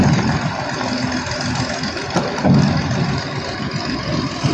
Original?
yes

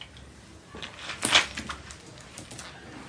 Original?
yes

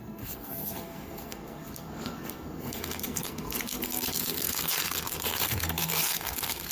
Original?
no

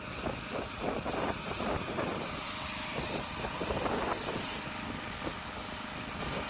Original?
yes